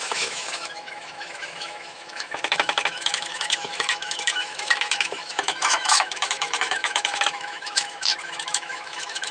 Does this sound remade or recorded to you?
remade